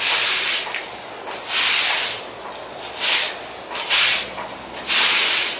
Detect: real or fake real